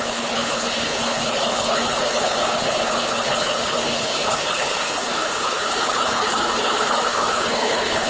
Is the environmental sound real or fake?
fake